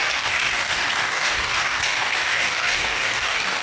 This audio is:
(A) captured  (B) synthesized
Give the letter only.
B